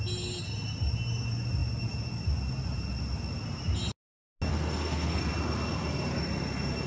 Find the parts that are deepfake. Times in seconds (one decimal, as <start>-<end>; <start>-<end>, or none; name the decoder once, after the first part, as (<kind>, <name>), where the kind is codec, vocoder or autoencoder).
4.5-5.2 (codec, SNAC)